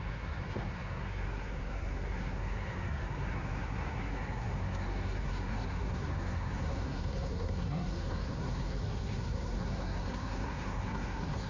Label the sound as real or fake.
fake